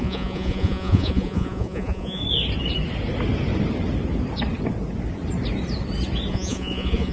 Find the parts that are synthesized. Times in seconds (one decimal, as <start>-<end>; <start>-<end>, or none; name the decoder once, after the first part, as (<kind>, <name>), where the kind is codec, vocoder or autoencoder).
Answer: 0.0-2.2 (vocoder, Vocos); 6.3-7.1